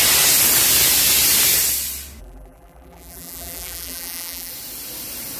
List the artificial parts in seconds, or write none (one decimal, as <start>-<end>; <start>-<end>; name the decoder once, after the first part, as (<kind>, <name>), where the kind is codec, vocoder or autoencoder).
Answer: 2.2-4.5 (vocoder, BigVGAN v2)